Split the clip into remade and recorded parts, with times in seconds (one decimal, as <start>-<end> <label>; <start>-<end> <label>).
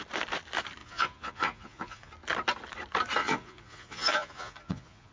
0.0-0.8 recorded; 0.8-2.1 remade; 2.1-3.2 recorded; 3.2-5.1 remade